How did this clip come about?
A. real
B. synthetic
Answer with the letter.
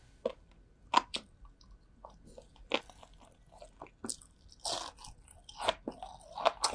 A